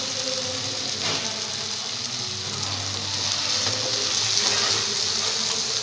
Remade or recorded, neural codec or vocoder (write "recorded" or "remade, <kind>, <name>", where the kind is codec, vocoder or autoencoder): recorded